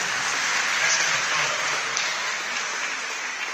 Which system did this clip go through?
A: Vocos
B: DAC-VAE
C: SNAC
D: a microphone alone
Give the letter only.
D